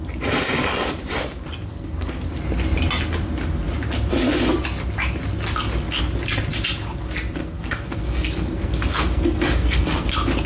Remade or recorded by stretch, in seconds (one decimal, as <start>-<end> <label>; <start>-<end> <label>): 0.0-1.7 recorded; 1.7-2.3 remade; 2.3-7.4 recorded; 7.4-10.1 remade; 10.1-10.5 recorded

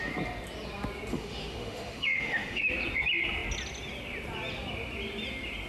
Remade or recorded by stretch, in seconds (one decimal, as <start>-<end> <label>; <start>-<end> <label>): 0.0-1.1 recorded; 1.1-2.6 remade; 2.6-5.7 recorded

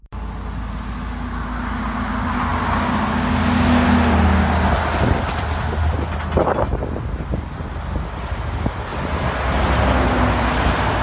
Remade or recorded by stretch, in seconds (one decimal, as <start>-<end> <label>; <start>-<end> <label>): 0.0-11.0 recorded

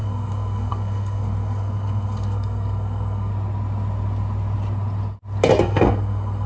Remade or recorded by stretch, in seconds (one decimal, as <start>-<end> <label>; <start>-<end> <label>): 0.0-3.3 remade; 3.3-5.6 recorded; 5.6-6.5 remade

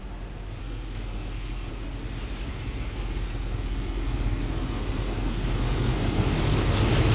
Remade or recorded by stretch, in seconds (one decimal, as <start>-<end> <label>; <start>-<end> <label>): 0.0-0.6 recorded; 0.6-1.7 remade; 1.7-2.5 recorded; 2.5-6.3 remade; 6.3-7.1 recorded

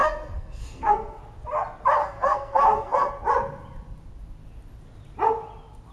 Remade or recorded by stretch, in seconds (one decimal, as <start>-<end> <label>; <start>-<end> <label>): 0.0-1.2 remade; 1.2-2.0 recorded; 2.0-3.1 remade; 3.1-5.9 recorded

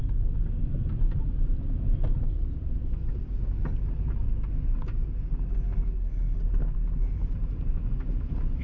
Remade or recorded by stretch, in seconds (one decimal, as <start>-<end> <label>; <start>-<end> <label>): 0.0-7.0 recorded; 7.0-8.6 remade